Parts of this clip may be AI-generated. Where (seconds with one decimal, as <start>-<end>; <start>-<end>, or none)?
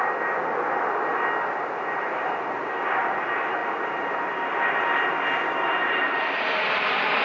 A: none